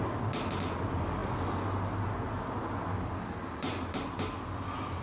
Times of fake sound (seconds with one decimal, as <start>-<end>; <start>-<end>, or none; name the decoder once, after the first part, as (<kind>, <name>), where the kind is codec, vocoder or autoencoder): none